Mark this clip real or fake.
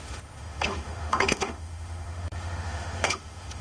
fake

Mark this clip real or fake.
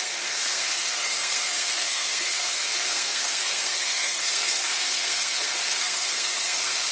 fake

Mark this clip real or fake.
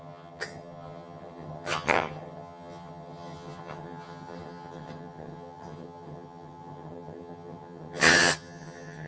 fake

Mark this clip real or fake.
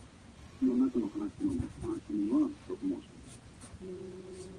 fake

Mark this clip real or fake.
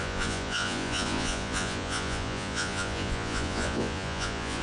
fake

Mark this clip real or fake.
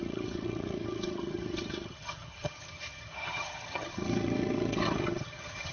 fake